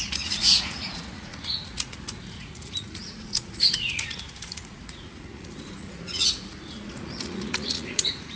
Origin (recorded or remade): remade